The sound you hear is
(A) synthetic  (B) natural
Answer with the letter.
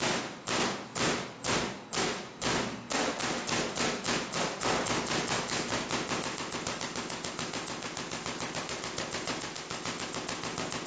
B